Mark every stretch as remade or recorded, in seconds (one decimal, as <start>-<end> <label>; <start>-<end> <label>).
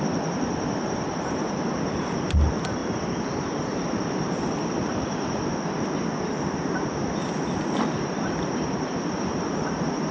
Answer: 0.0-10.1 recorded